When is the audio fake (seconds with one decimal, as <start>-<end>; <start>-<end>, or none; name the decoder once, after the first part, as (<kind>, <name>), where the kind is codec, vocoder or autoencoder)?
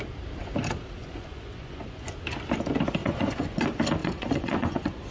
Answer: 1.0-2.1 (vocoder, Vocos); 3.0-3.6; 4.0-5.1